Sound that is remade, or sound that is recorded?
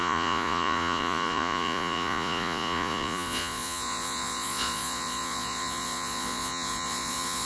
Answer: remade